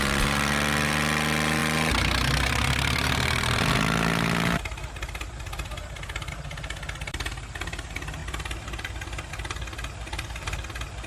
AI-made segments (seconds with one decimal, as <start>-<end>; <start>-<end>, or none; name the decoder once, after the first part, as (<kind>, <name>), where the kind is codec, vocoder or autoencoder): none